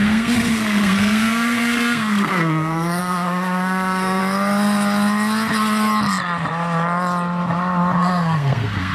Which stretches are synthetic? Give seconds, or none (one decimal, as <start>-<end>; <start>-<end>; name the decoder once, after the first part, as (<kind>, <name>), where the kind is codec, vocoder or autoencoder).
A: 0.0-4.2 (codec, SNAC); 8.0-8.9